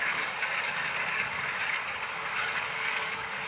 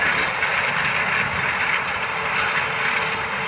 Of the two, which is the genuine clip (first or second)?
second